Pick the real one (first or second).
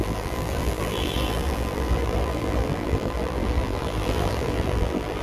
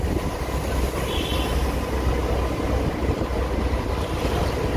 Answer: second